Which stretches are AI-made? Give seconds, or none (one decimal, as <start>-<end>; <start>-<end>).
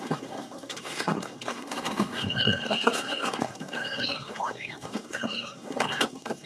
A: 0.0-6.5